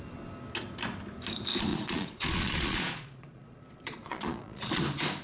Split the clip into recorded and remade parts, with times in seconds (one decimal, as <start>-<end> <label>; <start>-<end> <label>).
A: 0.0-1.7 recorded; 1.7-4.8 remade; 4.8-5.2 recorded